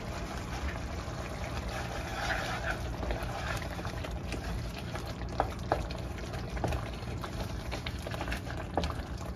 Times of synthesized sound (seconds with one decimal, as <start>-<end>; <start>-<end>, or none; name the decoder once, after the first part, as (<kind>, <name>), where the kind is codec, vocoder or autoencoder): 0.0-2.1 (vocoder, BigVGAN v2); 3.3-9.4